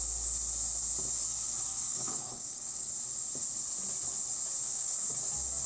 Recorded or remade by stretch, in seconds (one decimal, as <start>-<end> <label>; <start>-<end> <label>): 0.0-1.7 recorded; 1.7-2.9 remade; 2.9-4.6 recorded; 4.6-5.1 remade; 5.1-5.7 recorded

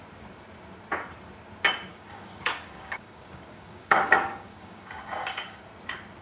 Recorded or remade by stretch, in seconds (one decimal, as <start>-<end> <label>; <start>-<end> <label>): 0.0-1.9 recorded; 1.9-5.6 remade; 5.6-6.2 recorded

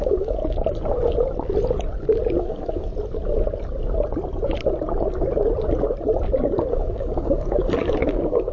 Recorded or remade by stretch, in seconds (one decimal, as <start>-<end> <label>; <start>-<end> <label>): 0.0-0.4 remade; 0.4-2.4 recorded; 2.4-2.9 remade; 2.9-6.7 recorded; 6.7-8.5 remade

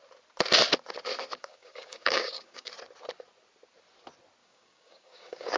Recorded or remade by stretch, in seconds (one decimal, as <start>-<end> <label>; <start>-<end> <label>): 0.0-1.4 recorded; 1.4-2.7 remade; 2.7-4.4 recorded; 4.4-5.6 remade